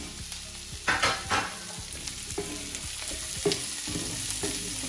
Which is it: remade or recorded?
recorded